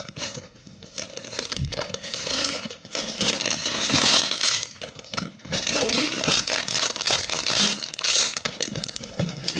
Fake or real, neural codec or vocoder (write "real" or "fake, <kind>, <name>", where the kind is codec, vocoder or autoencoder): fake, codec, SNAC